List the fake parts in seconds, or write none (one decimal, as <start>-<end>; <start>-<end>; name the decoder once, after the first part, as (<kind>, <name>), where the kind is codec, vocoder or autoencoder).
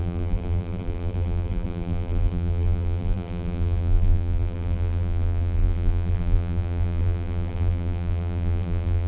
0.0-9.1 (vocoder, BigVGAN v2)